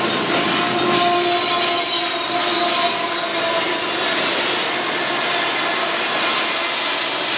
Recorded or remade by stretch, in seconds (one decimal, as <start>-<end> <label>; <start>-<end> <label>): 0.0-7.4 recorded

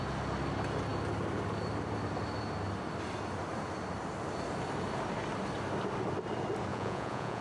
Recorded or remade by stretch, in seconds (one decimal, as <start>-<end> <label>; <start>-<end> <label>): 0.0-6.7 recorded; 6.7-7.4 remade

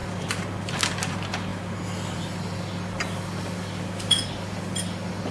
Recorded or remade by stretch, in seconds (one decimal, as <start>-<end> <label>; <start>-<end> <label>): 0.0-5.3 recorded

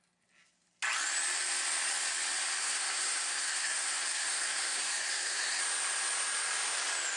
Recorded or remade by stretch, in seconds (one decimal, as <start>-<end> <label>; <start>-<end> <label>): 0.0-2.6 recorded; 2.6-5.6 remade; 5.6-7.2 recorded

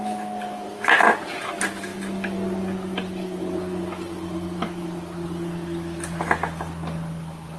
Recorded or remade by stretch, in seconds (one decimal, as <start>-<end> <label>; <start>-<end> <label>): 0.0-7.6 recorded

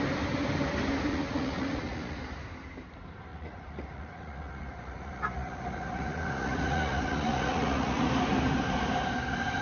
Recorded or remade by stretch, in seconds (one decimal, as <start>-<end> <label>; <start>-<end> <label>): 0.0-1.1 recorded; 1.1-2.2 remade; 2.2-3.3 recorded; 3.3-8.1 remade; 8.1-9.6 recorded